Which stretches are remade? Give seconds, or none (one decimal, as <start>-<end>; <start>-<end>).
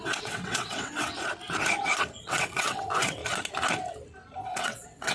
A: 0.0-1.1; 2.2-3.2; 4.4-5.1